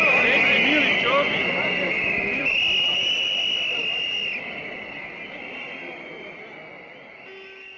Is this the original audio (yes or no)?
yes